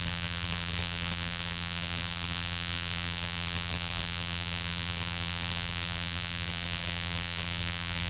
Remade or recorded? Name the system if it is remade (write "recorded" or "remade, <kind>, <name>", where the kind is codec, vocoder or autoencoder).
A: remade, vocoder, BigVGAN v2